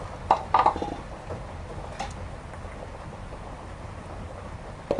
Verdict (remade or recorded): recorded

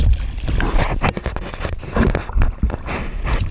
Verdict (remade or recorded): recorded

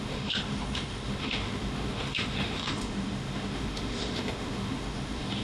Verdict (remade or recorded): remade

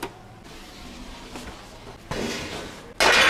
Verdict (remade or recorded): recorded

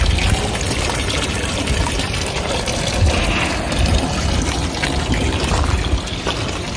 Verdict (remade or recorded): recorded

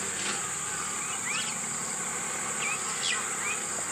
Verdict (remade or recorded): recorded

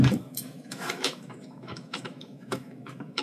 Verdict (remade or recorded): remade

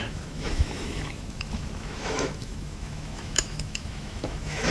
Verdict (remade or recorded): remade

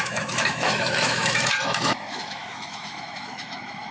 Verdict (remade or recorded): remade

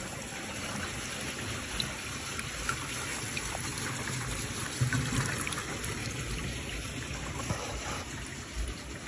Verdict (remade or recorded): recorded